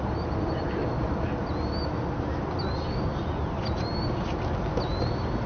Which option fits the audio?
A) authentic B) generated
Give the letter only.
A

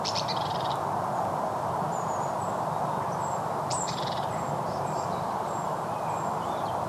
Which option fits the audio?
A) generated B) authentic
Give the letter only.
A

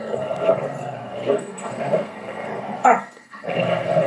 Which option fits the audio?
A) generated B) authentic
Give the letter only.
A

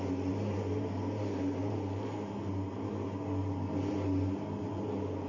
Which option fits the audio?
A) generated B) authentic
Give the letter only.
B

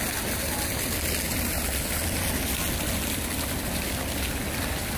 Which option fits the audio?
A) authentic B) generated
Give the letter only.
A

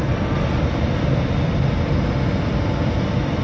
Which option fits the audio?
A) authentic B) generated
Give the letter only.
A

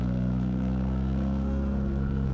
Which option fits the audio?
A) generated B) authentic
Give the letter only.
A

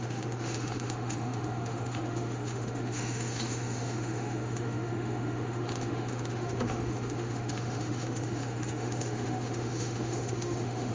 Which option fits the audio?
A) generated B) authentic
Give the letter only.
A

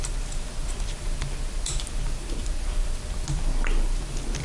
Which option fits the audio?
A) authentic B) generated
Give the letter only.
B